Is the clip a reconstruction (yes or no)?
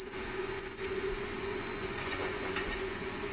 yes